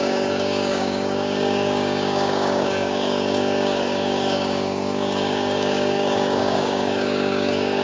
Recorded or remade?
remade